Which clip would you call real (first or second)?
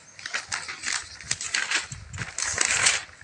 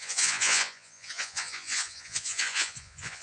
first